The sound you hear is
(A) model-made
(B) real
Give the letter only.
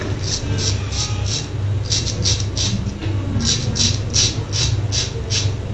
B